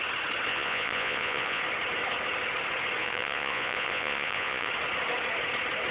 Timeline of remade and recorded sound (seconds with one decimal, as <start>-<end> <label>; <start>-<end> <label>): 0.0-0.5 recorded; 0.5-1.6 remade; 1.6-3.0 recorded; 3.0-4.7 remade; 4.7-5.9 recorded